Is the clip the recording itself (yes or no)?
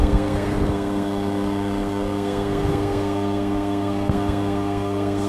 no